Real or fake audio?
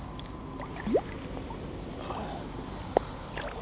real